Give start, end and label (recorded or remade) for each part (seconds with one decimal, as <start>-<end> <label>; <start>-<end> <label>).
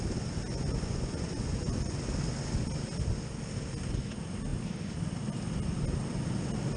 0.0-0.5 recorded; 0.5-2.0 remade; 2.0-6.8 recorded